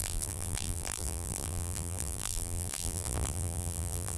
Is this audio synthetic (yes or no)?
yes